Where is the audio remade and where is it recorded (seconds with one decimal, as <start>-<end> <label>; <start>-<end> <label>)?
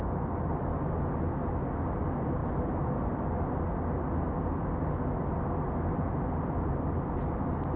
0.0-7.8 recorded